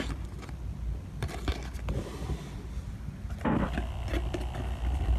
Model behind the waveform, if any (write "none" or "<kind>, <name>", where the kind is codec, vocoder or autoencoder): none